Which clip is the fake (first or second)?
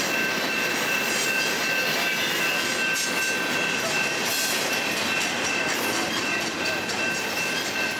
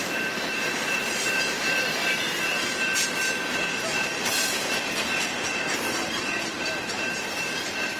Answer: second